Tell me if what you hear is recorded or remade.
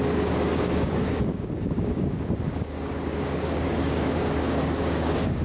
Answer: remade